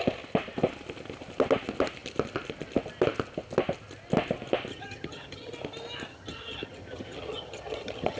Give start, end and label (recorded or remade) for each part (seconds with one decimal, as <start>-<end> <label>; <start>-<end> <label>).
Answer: 0.0-4.7 recorded; 4.7-5.5 remade; 5.5-6.1 recorded; 6.1-8.2 remade